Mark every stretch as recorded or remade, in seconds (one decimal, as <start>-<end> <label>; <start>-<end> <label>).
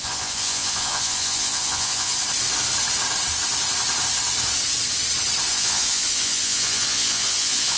0.0-2.1 remade; 2.1-5.5 recorded; 5.5-7.8 remade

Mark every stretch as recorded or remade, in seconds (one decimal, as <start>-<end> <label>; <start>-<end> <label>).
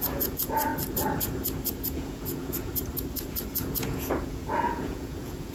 0.0-0.7 remade; 0.7-1.8 recorded; 1.8-2.7 remade; 2.7-3.5 recorded; 3.5-5.5 remade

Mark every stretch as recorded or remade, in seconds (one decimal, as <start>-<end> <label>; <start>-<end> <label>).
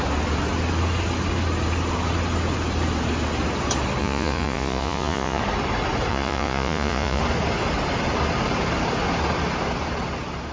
0.0-4.0 recorded; 4.0-5.4 remade; 5.4-6.1 recorded; 6.1-7.2 remade; 7.2-10.5 recorded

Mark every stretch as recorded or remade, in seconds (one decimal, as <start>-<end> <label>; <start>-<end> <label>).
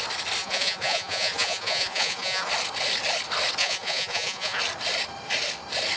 0.0-0.4 recorded; 0.4-2.5 remade; 2.5-3.6 recorded; 3.6-4.6 remade; 4.6-6.0 recorded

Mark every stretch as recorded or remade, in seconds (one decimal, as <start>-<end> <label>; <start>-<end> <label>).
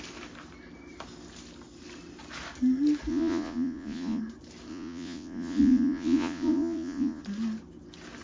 0.0-3.1 recorded; 3.1-4.2 remade; 4.2-4.7 recorded; 4.7-7.2 remade; 7.2-8.2 recorded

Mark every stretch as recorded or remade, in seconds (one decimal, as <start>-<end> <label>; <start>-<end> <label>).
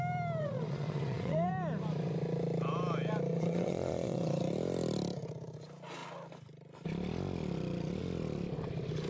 0.0-0.4 recorded; 0.4-1.5 remade; 1.5-3.3 recorded; 3.3-4.4 remade; 4.4-9.1 recorded